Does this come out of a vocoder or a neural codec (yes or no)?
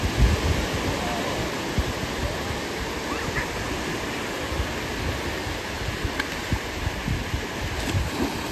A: no